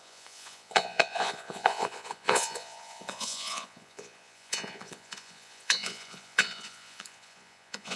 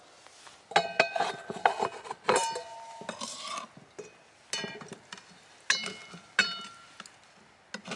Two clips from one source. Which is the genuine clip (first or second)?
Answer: second